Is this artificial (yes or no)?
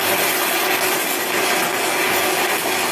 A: no